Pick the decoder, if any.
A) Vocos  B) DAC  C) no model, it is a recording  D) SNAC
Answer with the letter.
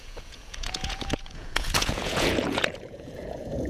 A